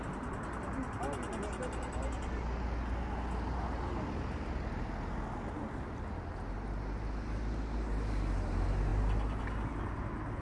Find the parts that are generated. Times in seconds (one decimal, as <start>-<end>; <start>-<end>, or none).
none